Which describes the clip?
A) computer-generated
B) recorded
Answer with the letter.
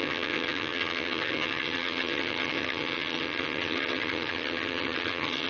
A